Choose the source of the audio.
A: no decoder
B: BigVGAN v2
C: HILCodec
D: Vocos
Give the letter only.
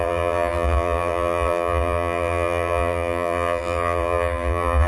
B